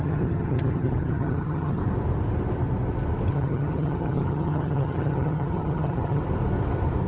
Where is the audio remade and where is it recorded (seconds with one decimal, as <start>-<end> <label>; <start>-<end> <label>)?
0.0-1.8 remade; 1.8-3.3 recorded; 3.3-6.2 remade; 6.2-7.1 recorded